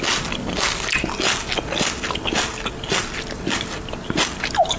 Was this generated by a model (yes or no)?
no